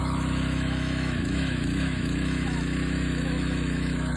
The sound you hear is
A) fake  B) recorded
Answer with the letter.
A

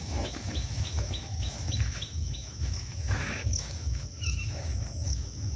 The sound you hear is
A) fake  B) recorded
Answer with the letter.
A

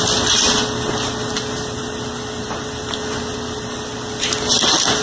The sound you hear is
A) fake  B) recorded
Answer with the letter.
B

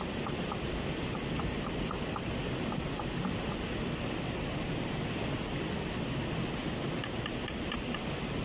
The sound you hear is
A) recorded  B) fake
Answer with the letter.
A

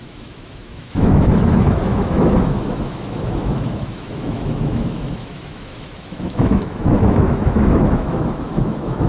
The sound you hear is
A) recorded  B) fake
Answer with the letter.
B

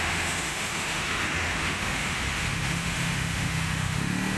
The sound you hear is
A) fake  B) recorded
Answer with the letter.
A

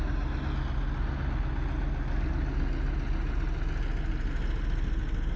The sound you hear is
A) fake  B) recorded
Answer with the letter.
B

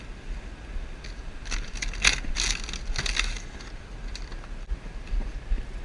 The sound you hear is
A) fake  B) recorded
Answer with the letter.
B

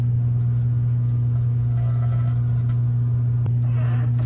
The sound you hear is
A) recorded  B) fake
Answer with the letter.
A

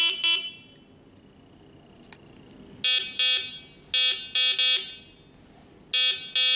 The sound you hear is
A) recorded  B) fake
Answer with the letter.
A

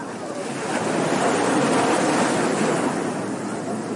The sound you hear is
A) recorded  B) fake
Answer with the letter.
A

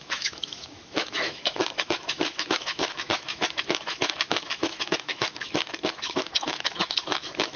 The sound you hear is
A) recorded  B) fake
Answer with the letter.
B